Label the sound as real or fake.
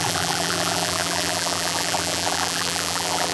fake